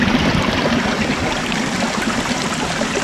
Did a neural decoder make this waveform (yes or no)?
yes